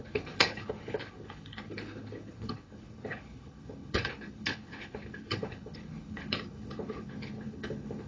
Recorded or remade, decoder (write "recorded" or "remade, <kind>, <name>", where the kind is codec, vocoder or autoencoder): remade, codec, HILCodec